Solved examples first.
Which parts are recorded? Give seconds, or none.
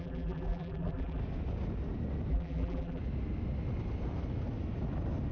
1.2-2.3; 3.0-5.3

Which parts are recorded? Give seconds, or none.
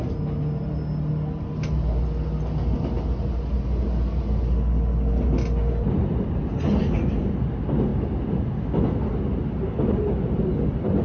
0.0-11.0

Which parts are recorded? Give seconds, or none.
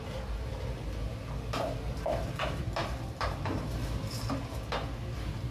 0.0-5.5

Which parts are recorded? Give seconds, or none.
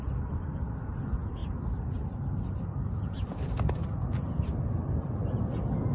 0.0-5.9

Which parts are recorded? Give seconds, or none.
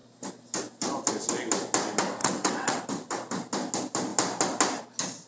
0.0-2.2; 2.8-5.3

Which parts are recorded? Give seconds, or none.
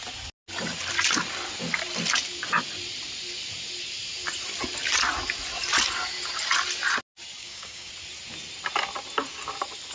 0.0-7.4; 7.9-9.9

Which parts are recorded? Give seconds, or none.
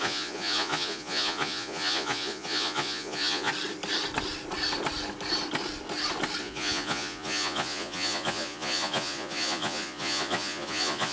3.5-6.4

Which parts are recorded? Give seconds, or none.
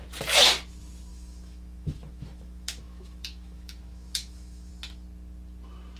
0.0-1.1; 4.7-6.0